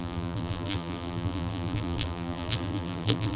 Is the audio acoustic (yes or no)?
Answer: no